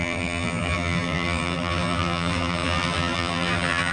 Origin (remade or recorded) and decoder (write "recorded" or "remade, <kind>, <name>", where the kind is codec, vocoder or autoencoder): remade, vocoder, BigVGAN v2